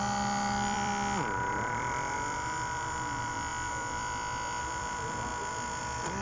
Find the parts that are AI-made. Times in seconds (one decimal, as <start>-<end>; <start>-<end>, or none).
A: 0.0-0.9; 1.5-6.2

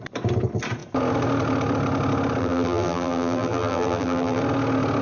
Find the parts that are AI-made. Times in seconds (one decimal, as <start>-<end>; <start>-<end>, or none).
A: 2.4-4.4